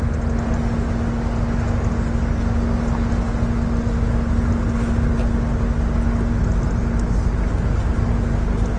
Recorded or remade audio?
recorded